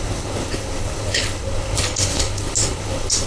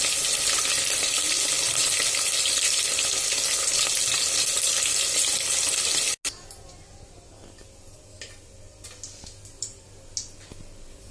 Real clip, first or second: second